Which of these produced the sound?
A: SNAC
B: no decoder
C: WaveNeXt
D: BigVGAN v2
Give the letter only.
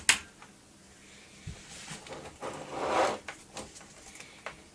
B